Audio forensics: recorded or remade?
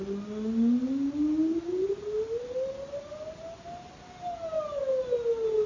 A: recorded